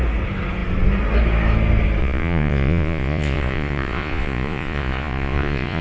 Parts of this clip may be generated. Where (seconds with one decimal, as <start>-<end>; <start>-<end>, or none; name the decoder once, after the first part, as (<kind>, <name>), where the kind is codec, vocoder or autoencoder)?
2.0-5.8 (vocoder, Vocos)